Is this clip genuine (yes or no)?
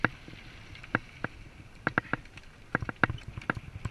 yes